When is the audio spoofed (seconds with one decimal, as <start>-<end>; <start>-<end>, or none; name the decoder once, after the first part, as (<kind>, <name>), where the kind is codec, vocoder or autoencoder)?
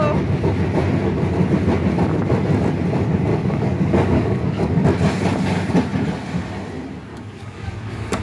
3.3-4.8 (codec, DAC); 7.1-8.2